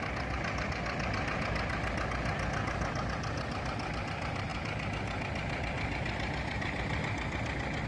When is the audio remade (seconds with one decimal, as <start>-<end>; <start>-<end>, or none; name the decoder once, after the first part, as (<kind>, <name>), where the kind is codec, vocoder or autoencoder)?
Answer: none